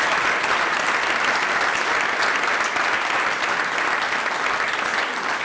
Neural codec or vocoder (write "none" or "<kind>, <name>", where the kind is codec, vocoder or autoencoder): none